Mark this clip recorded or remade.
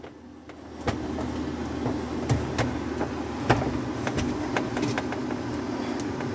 recorded